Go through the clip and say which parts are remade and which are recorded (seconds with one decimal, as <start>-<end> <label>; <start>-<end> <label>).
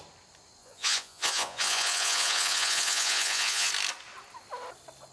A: 0.0-0.6 recorded; 0.6-3.7 remade; 3.7-5.1 recorded